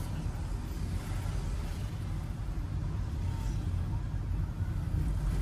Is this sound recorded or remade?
recorded